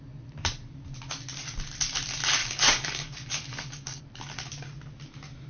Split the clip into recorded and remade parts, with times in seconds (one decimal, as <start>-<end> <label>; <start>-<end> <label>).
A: 0.0-2.4 recorded; 2.4-4.0 remade; 4.0-5.5 recorded